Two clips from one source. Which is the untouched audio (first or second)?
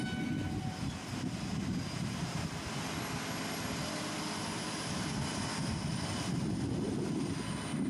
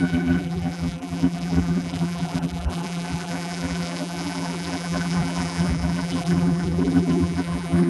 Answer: first